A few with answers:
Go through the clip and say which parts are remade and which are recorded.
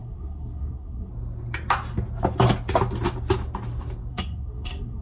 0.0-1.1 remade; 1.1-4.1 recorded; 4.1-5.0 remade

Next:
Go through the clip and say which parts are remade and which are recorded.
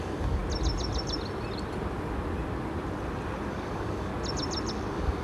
0.0-0.4 remade; 0.4-3.5 recorded; 3.5-4.1 remade; 4.1-4.7 recorded; 4.7-5.2 remade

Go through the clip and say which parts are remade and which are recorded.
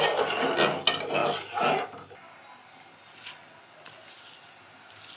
0.0-5.2 recorded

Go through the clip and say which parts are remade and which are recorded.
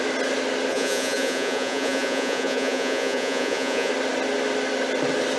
0.0-0.7 recorded; 0.7-3.9 remade; 3.9-5.4 recorded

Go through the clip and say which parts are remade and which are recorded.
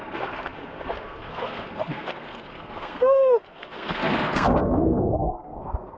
0.0-6.0 remade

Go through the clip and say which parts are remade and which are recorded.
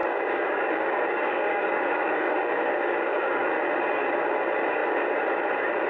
0.0-3.5 remade; 3.5-5.9 recorded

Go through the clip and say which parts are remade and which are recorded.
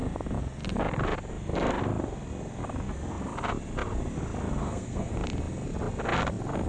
0.0-4.6 recorded; 4.6-5.1 remade; 5.1-6.7 recorded